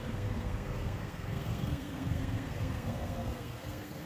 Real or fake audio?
fake